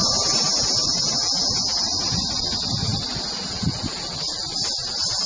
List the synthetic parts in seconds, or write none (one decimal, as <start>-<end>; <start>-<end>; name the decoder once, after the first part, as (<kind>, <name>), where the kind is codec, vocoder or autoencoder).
none